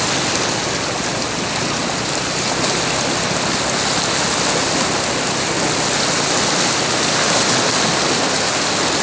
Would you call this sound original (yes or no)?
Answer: yes